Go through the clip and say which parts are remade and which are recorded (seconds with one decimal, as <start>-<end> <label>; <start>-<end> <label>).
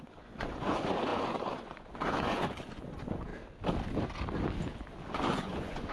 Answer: 0.0-3.3 remade; 3.3-5.0 recorded; 5.0-5.9 remade